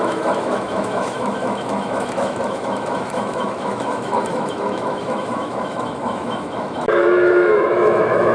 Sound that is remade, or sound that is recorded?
remade